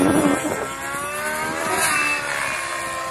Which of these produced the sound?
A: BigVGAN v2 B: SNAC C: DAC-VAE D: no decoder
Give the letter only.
D